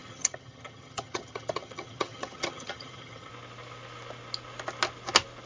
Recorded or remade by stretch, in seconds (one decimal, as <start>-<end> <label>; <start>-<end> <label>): 0.0-3.3 remade; 3.3-5.5 recorded